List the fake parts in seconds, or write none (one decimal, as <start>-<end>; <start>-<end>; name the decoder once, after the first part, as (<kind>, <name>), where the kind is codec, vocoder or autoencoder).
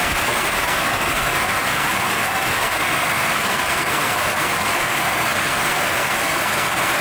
0.0-7.0 (codec, SNAC)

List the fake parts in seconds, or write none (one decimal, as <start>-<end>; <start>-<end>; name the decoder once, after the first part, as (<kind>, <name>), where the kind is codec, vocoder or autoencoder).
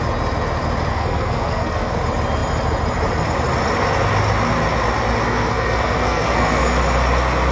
0.9-2.0 (codec, SNAC); 5.2-6.8